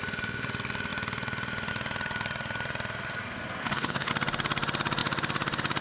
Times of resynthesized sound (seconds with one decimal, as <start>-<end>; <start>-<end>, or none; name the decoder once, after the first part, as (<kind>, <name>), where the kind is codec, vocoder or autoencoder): 3.6-4.1 (codec, HILCodec)